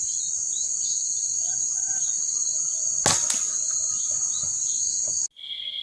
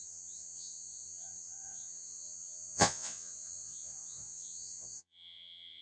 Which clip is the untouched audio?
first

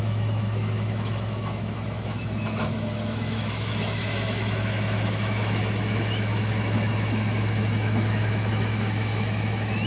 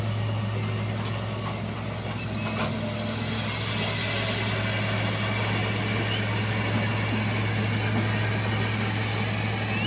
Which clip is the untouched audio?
second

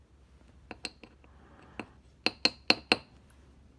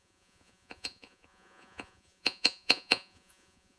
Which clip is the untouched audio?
first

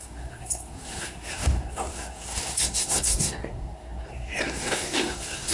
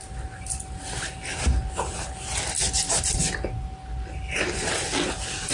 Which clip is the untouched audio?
second